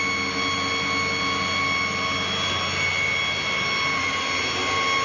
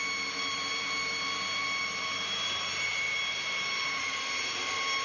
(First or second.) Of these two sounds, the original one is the first